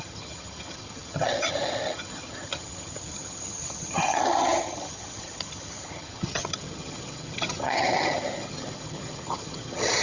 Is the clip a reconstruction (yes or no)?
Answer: yes